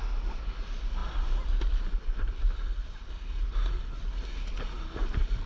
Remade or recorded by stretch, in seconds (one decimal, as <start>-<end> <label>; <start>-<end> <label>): 0.0-5.5 recorded

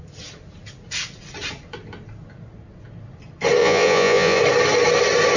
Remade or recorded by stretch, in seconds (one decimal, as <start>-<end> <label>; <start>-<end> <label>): 0.0-3.6 recorded; 3.6-4.4 remade; 4.4-5.4 recorded

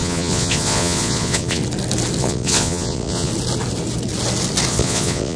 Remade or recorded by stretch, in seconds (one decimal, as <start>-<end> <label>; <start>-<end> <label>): 0.0-1.6 remade; 1.6-2.2 recorded; 2.2-3.3 remade; 3.3-4.7 recorded; 4.7-5.4 remade

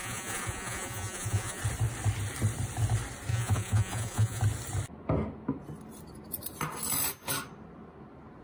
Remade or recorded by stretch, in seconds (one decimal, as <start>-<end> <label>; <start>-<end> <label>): 0.0-1.6 remade; 1.6-3.3 recorded; 3.3-4.4 remade; 4.4-8.4 recorded

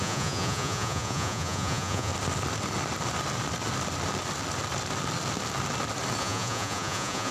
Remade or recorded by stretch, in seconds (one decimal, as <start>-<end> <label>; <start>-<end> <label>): 0.0-2.1 remade; 2.1-6.2 recorded; 6.2-7.3 remade

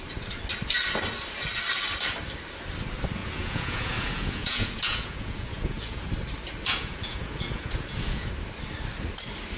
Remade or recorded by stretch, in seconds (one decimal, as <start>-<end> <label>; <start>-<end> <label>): 0.0-3.2 recorded; 3.2-6.1 remade; 6.1-6.7 recorded; 6.7-8.3 remade; 8.3-9.6 recorded

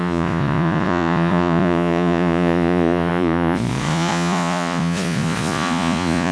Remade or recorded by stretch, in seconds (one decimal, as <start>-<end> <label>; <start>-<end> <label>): 0.0-6.3 remade

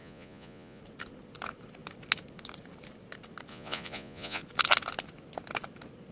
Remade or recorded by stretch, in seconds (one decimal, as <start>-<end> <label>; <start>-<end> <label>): 0.0-0.8 remade; 0.8-3.5 recorded; 3.5-4.4 remade; 4.4-6.1 recorded